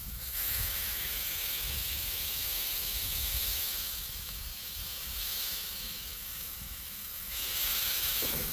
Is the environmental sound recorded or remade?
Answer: remade